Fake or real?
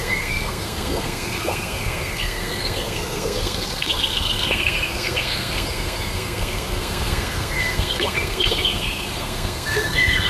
fake